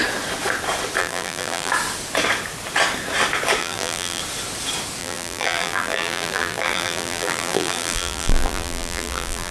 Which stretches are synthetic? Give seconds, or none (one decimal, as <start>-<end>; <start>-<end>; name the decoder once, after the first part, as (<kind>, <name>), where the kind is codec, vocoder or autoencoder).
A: 1.0-1.7 (vocoder, BigVGAN v2); 3.6-4.2; 5.0-9.5